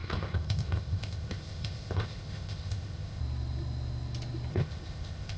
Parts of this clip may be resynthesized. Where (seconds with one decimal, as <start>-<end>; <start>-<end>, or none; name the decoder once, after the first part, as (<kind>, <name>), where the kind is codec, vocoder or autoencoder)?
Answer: 0.0-3.2 (codec, ZipCodec); 4.5-5.4